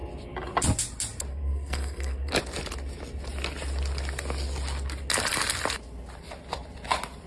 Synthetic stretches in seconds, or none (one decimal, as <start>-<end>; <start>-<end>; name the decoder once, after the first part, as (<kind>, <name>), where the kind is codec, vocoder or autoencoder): 1.3-2.3 (codec, SNAC)